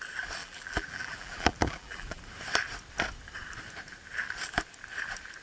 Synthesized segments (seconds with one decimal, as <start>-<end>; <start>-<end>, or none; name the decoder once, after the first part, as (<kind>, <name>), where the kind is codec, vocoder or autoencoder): 0.4-2.2 (vocoder, BigVGAN v2)